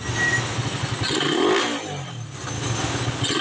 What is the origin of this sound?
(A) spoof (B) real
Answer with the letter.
B